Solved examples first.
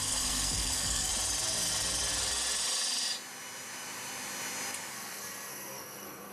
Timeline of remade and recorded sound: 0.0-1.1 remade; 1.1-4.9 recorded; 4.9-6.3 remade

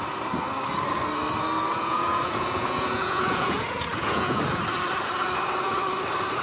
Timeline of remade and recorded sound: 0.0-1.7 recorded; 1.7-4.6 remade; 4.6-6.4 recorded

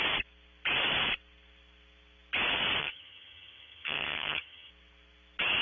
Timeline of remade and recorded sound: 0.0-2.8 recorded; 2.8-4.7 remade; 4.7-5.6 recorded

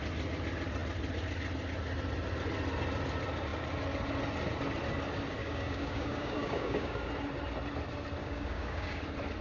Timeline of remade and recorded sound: 0.0-5.4 recorded; 5.4-7.1 remade; 7.1-8.2 recorded; 8.2-9.0 remade; 9.0-9.4 recorded

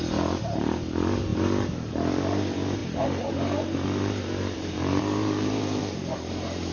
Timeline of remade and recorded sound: 0.0-6.7 remade